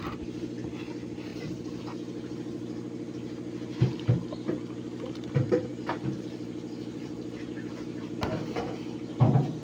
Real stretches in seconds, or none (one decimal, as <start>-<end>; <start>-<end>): 0.0-1.3; 1.8-5.7; 8.3-9.6